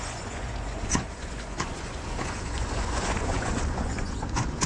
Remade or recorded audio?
remade